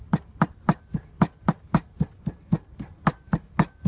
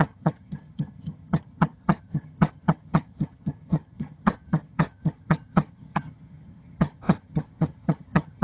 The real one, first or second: first